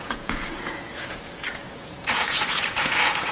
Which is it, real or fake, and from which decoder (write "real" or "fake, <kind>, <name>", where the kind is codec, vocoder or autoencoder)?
fake, vocoder, Vocos